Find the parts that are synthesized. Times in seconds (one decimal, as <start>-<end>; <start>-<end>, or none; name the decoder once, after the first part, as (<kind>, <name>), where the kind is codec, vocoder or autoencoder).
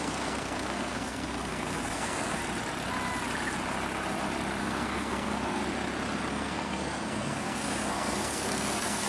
0.0-2.4 (codec, SNAC); 4.6-5.6; 6.3-9.1